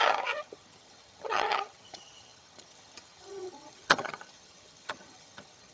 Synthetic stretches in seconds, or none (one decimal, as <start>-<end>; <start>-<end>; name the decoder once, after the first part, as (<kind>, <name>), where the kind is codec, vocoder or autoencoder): 0.0-5.7 (vocoder, HiFi-GAN)